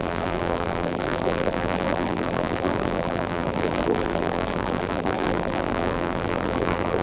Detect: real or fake fake